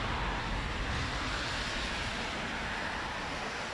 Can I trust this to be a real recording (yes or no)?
yes